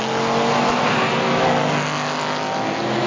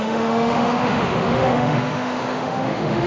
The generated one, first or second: second